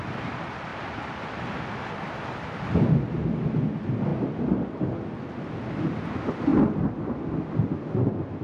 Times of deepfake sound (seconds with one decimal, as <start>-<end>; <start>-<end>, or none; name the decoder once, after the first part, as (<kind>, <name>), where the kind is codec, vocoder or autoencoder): 0.0-0.7 (vocoder, BigVGAN v2); 3.5-4.1; 5.7-6.5